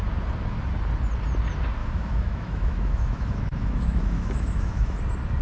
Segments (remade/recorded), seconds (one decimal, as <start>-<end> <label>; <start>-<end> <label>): 0.0-1.8 recorded; 1.8-5.0 remade; 5.0-5.4 recorded